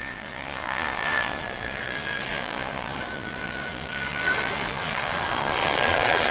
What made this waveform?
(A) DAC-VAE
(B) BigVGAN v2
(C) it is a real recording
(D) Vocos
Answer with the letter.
D